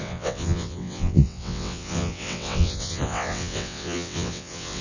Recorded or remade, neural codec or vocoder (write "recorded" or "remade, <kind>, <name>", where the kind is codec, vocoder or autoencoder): remade, vocoder, WaveNeXt